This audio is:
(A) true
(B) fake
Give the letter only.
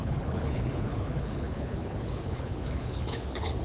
B